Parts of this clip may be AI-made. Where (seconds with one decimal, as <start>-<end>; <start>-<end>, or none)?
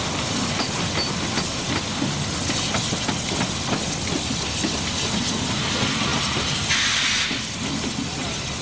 none